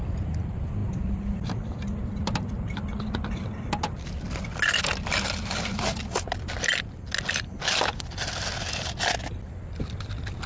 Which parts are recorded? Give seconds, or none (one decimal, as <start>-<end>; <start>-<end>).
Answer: 0.0-10.5